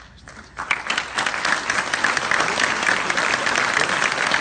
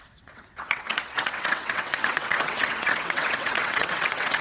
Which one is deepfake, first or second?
second